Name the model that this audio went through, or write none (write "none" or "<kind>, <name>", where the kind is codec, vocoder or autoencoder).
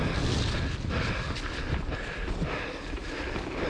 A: none